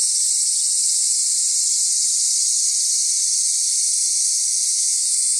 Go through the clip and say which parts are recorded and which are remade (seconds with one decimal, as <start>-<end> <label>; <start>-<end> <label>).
0.0-4.7 recorded; 4.7-5.4 remade